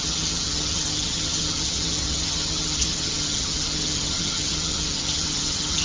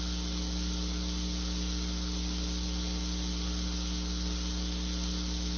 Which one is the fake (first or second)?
first